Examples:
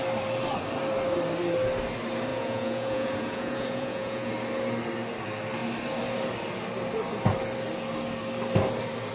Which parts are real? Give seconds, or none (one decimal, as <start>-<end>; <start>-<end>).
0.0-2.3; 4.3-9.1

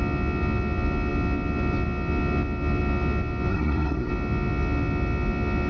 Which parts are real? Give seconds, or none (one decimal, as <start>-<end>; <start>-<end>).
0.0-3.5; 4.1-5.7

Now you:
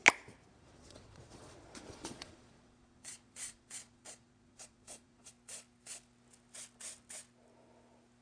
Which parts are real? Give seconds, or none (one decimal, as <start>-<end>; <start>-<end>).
0.0-0.5; 5.3-8.2